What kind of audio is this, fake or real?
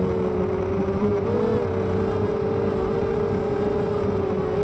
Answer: real